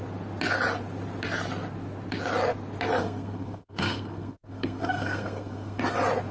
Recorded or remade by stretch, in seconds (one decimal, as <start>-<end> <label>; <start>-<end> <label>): 0.0-3.0 recorded; 3.0-5.8 remade; 5.8-6.3 recorded